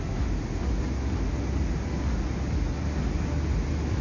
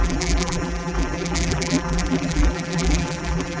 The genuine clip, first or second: first